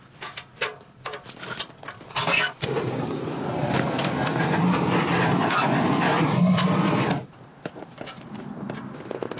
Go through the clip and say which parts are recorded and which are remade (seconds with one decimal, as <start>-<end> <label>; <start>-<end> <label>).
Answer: 0.0-7.5 recorded; 7.5-8.4 remade; 8.4-9.4 recorded